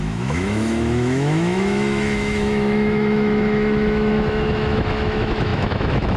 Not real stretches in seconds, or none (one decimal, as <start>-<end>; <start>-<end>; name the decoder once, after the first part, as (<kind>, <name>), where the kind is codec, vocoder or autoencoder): 0.0-6.2 (autoencoder, DAC-VAE)